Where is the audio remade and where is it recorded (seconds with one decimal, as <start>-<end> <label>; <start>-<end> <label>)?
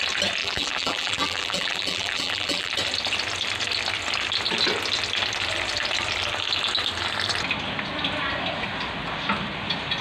0.0-0.4 recorded; 0.4-2.7 remade; 2.7-10.0 recorded